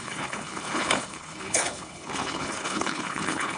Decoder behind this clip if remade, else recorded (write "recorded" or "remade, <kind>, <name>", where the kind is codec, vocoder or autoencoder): remade, codec, HILCodec